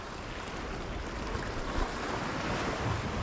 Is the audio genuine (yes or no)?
yes